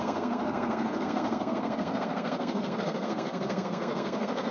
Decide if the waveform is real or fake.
fake